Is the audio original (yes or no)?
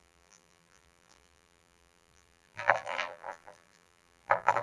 no